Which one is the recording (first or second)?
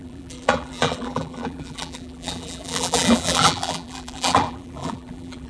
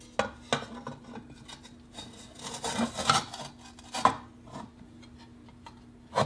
second